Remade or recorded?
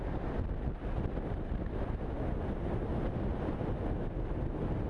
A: recorded